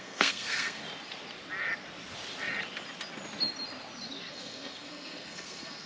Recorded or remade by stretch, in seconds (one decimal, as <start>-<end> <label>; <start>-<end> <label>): 0.0-0.8 remade; 0.8-4.3 recorded; 4.3-5.9 remade